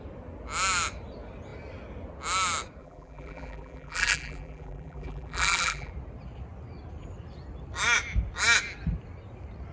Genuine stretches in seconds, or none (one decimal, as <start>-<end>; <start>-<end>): 0.0-2.8; 5.9-9.7